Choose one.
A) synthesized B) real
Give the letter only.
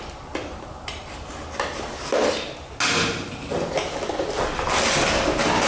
B